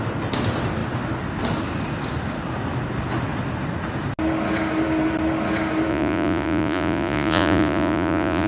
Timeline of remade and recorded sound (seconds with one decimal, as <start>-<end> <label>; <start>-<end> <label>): 0.0-5.9 recorded; 5.9-8.5 remade